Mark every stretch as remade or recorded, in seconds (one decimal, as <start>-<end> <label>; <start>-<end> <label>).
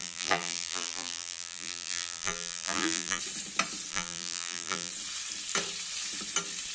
0.0-3.2 remade; 3.2-3.9 recorded; 3.9-4.9 remade; 4.9-6.7 recorded